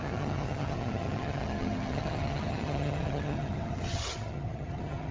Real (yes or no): no